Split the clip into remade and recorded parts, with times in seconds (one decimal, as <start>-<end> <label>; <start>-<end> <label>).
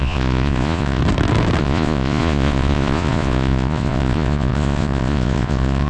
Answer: 0.0-1.0 remade; 1.0-1.6 recorded; 1.6-5.9 remade